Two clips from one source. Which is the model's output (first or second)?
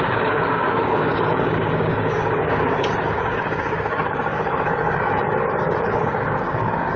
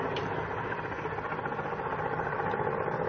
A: first